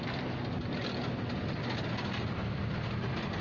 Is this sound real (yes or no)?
yes